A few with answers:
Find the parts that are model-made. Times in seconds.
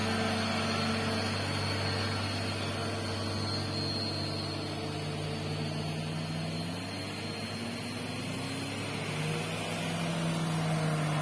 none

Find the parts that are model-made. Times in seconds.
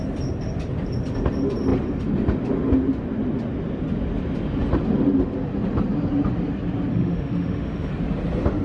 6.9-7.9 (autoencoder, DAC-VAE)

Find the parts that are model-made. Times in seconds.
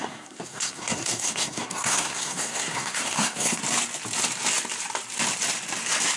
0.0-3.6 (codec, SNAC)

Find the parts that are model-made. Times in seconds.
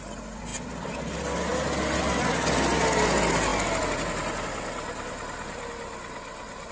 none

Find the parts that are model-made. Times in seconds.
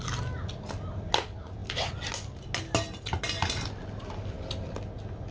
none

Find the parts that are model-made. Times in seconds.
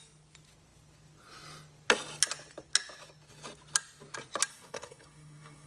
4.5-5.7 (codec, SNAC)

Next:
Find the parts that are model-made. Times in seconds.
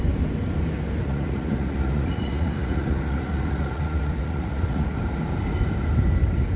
1.0-5.0 (vocoder, Vocos)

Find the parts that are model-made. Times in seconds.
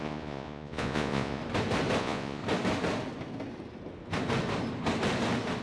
0.0-1.4 (vocoder, Vocos); 2.0-2.4